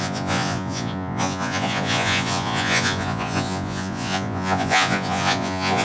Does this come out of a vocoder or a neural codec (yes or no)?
yes